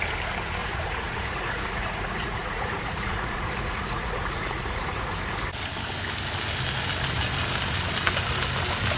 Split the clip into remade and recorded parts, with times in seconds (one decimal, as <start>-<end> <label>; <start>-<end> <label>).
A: 0.0-0.6 recorded; 0.6-5.1 remade; 5.1-9.0 recorded